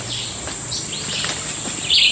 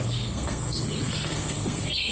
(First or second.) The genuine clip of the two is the first